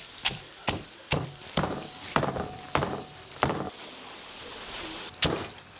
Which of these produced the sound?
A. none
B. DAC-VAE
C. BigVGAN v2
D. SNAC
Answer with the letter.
C